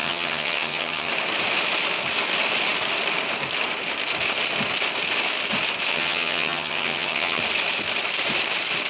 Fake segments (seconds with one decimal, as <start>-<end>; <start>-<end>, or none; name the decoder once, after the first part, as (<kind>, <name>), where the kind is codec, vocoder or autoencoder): 0.0-1.1 (vocoder, HiFi-GAN); 5.9-7.4